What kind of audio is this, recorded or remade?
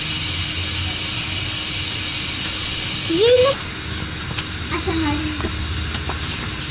recorded